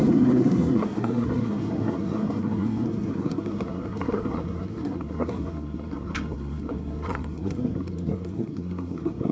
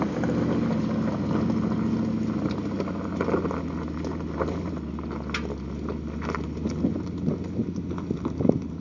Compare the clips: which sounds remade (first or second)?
first